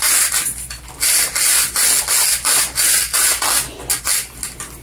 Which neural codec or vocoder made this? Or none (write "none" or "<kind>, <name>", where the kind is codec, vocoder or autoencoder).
none